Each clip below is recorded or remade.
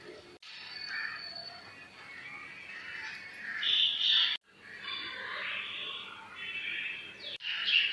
recorded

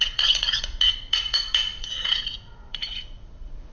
remade